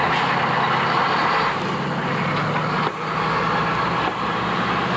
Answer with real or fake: real